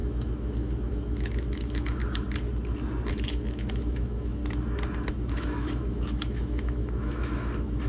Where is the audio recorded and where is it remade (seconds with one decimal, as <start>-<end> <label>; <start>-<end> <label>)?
0.0-2.0 remade; 2.0-3.1 recorded; 3.1-4.4 remade; 4.4-5.1 recorded; 5.1-7.9 remade